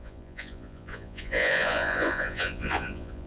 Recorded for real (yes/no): no